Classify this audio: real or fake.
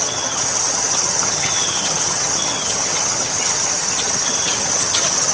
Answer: fake